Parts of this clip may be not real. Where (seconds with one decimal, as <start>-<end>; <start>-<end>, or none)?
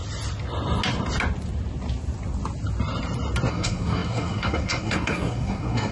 3.5-5.9